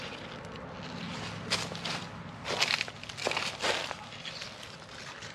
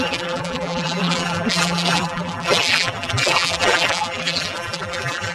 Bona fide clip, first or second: first